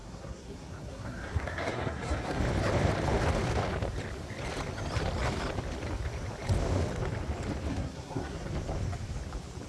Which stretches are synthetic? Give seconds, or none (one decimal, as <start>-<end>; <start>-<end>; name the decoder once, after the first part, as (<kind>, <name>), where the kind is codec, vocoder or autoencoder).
0.0-2.4 (codec, SNAC); 7.7-8.5